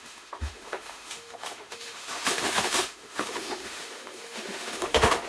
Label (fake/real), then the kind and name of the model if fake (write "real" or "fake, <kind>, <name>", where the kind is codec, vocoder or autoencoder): fake, autoencoder, DAC-VAE